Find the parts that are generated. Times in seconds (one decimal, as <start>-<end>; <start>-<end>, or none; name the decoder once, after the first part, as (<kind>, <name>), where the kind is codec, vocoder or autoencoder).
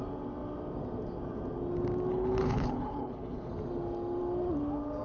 2.1-3.5 (codec, HILCodec)